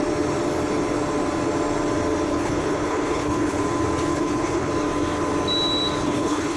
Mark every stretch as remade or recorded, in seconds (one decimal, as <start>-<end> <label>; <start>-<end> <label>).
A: 0.0-2.3 recorded; 2.3-3.6 remade; 3.6-4.1 recorded; 4.1-4.7 remade; 4.7-6.0 recorded; 6.0-6.6 remade